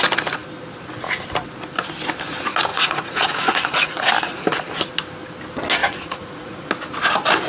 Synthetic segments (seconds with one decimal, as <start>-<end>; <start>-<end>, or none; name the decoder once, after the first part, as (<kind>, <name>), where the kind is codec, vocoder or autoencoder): 2.7-4.1 (vocoder, Vocos); 5.8-6.7